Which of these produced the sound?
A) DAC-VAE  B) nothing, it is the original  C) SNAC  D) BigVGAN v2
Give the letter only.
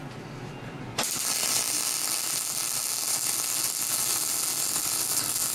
B